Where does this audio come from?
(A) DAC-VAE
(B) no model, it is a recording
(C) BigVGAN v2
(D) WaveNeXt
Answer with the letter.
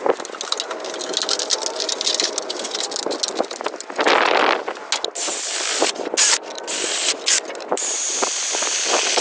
B